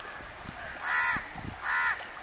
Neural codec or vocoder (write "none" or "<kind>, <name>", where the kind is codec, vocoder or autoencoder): none